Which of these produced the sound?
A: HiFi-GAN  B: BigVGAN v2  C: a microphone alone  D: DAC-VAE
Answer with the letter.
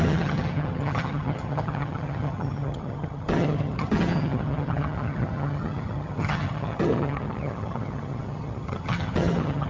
A